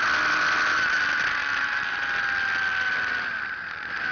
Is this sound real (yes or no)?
yes